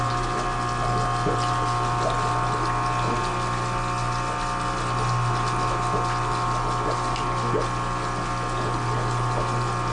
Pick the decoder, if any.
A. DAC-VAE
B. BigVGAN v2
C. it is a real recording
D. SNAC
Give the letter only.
C